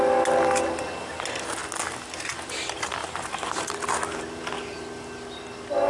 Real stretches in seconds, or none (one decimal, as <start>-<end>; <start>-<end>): 0.0-3.0; 3.7-5.9